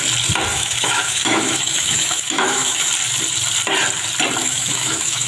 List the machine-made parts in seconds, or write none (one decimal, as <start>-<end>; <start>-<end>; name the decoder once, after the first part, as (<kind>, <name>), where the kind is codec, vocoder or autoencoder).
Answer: 0.5-2.9 (autoencoder, DAC-VAE); 4.4-5.3